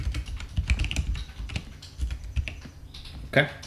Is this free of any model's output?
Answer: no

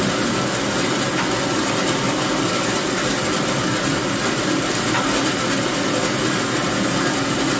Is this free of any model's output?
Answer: yes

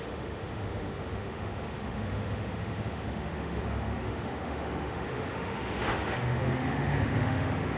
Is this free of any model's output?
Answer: no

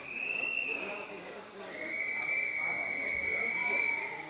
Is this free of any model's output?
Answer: no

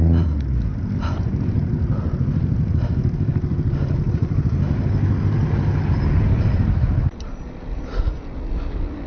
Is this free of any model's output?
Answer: yes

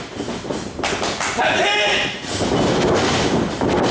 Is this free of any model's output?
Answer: yes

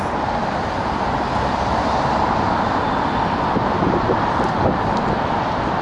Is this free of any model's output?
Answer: yes